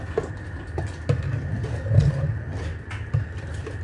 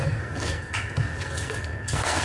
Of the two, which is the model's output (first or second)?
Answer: second